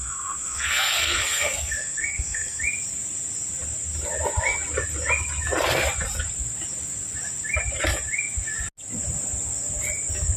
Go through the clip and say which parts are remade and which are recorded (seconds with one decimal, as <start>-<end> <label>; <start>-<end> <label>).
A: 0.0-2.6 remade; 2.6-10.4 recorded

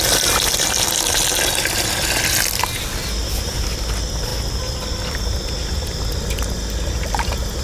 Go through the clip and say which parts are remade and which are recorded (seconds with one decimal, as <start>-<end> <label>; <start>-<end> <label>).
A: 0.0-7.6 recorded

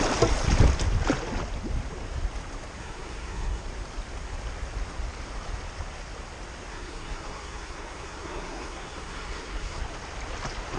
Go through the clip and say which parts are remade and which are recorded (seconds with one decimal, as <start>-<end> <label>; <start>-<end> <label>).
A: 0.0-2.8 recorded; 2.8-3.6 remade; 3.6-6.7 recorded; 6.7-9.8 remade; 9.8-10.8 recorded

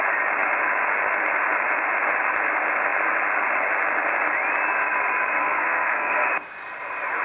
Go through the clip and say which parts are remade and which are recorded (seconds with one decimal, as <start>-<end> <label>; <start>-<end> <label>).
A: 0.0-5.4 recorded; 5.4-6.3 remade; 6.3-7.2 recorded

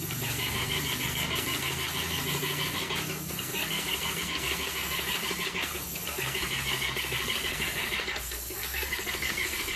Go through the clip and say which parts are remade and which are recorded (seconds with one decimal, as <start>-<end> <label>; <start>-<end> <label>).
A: 0.0-9.8 remade